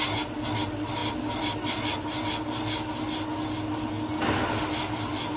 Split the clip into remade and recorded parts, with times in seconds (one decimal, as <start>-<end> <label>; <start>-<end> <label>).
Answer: 0.0-5.4 recorded